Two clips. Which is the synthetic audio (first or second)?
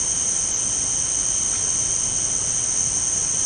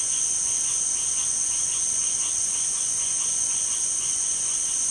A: second